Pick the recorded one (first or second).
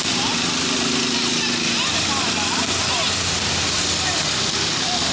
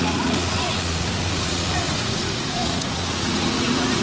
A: first